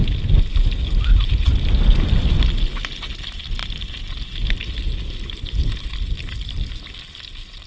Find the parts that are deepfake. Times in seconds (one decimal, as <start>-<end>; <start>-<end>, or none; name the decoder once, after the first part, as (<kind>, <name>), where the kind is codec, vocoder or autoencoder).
none